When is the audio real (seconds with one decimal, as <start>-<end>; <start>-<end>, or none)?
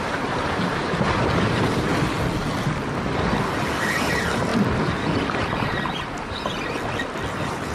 1.9-4.0; 4.5-7.3